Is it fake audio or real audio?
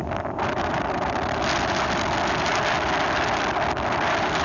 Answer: real